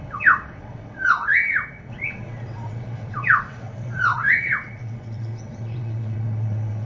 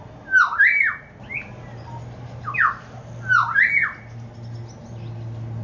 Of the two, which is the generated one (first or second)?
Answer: first